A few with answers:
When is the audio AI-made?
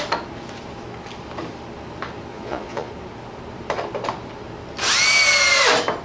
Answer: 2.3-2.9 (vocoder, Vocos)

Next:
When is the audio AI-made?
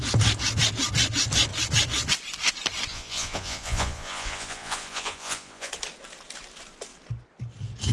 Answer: 2.9-5.7 (vocoder, Vocos)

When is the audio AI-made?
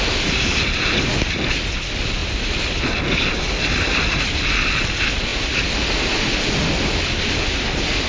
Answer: none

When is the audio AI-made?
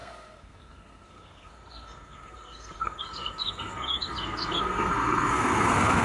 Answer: 0.0-6.0 (codec, SNAC)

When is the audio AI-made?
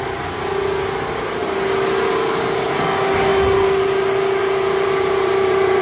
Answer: 4.4-5.8 (vocoder, BigVGAN v2)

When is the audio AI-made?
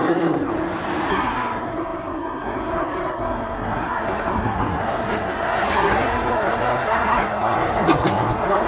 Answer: 0.0-0.5 (codec, SNAC); 1.1-8.7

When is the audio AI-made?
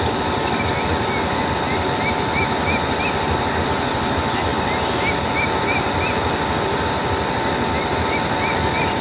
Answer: none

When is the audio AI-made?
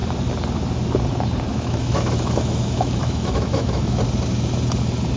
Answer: 1.5-4.0 (autoencoder, DAC-VAE)